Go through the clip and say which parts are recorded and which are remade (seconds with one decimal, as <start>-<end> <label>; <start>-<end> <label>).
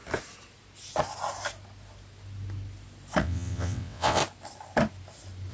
0.0-3.2 recorded; 3.2-4.2 remade; 4.2-5.5 recorded